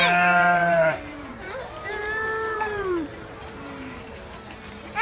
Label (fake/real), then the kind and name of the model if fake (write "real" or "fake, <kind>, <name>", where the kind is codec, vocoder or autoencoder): fake, vocoder, BigVGAN v2